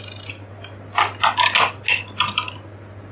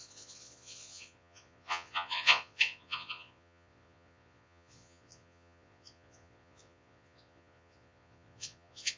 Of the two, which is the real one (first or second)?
first